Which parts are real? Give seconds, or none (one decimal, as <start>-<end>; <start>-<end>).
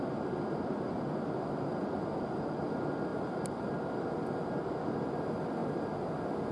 0.0-3.1; 3.7-6.5